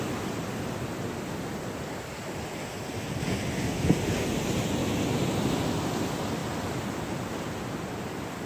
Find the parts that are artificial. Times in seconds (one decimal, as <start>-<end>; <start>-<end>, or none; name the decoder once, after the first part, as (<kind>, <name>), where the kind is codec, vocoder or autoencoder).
6.4-7.1 (vocoder, BigVGAN v2)